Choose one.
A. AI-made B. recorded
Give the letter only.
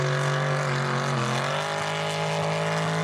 B